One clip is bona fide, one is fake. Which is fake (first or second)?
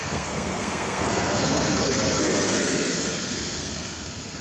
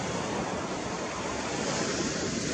first